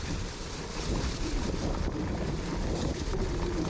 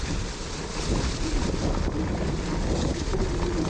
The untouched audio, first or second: second